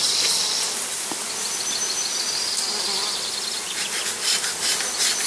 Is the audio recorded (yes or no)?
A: yes